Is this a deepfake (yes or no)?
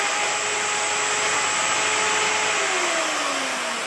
no